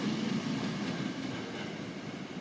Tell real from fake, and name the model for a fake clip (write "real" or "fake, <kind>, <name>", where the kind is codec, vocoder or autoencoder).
real